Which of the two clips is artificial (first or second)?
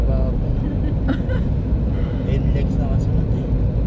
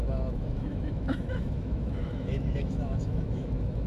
second